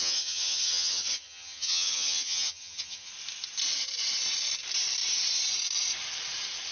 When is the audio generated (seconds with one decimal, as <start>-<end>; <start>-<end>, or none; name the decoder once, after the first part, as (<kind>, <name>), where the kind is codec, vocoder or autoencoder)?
0.0-3.1 (vocoder, HiFi-GAN)